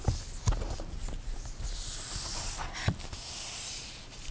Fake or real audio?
real